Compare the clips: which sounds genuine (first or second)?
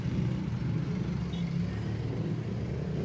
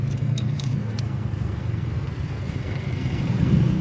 first